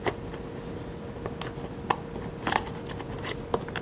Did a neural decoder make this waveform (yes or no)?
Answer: no